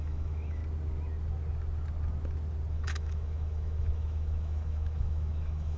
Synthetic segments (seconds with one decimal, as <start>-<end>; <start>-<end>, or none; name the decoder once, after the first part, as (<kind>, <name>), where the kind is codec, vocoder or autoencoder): 0.0-0.6 (autoencoder, DAC-VAE); 2.7-5.8

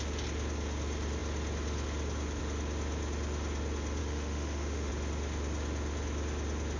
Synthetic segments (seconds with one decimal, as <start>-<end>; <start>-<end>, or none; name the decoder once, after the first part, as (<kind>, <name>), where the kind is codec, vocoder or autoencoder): 4.0-4.9 (autoencoder, DAC-VAE)